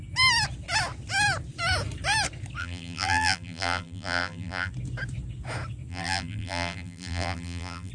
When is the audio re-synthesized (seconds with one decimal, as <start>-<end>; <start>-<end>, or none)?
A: 2.6-4.7; 5.9-7.9

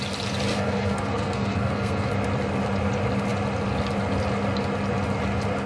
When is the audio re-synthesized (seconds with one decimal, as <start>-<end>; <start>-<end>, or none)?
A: 0.5-2.1

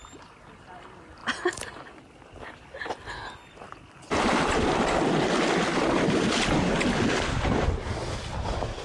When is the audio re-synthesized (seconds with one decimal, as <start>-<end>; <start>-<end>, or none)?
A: none